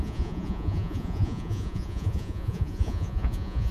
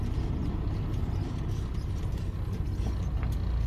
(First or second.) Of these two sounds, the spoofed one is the first